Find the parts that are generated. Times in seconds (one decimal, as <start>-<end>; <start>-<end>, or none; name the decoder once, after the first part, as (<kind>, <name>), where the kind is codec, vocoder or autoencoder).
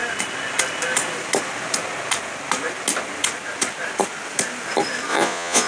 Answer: 5.1-5.7 (vocoder, Vocos)